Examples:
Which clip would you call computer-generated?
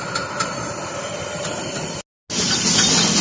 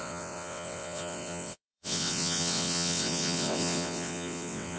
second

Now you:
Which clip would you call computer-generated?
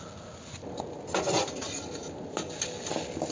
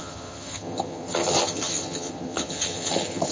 second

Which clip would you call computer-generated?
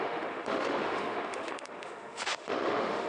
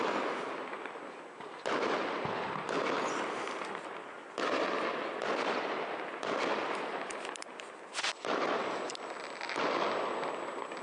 first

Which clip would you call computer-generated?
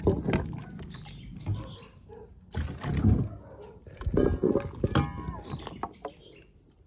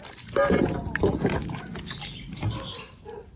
second